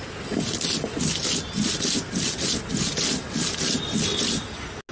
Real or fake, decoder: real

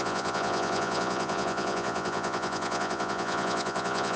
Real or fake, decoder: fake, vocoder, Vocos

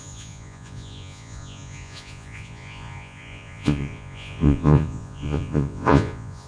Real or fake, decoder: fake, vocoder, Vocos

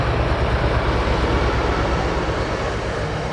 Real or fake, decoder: real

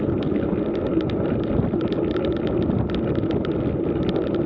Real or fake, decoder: real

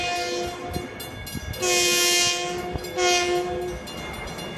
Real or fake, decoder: real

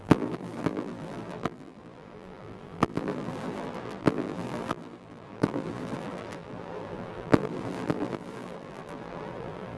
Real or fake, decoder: fake, vocoder, BigVGAN v2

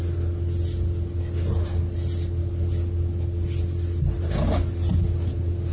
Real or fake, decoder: real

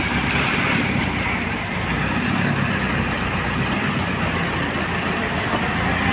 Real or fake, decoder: real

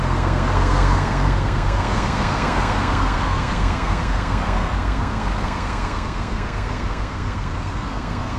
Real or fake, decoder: fake, codec, SNAC